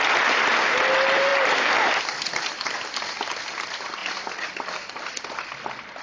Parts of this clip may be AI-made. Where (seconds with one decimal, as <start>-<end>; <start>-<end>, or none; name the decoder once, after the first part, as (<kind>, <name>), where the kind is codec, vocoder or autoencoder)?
none

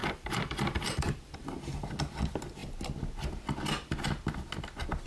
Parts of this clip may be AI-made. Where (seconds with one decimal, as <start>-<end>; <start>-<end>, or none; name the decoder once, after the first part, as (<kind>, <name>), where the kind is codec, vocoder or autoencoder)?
0.0-1.9 (vocoder, BigVGAN v2)